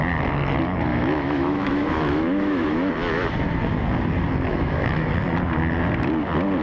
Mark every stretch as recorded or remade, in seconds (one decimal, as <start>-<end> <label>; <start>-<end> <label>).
0.0-0.9 recorded; 0.9-2.9 remade; 2.9-4.5 recorded; 4.5-5.1 remade; 5.1-6.6 recorded